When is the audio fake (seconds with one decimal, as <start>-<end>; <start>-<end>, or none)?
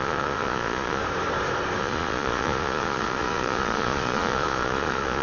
0.0-1.0; 1.8-5.2